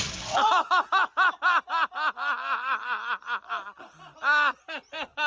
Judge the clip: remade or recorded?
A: recorded